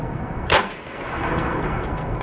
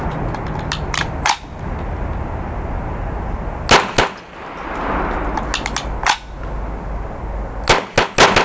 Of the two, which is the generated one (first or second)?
first